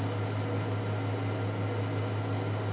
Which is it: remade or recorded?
recorded